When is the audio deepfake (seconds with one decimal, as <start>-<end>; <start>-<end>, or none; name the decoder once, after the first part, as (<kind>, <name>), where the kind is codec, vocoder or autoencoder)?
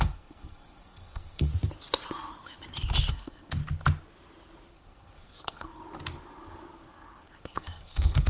0.0-1.5 (codec, SNAC); 3.1-3.6; 4.7-5.8; 7.4-8.3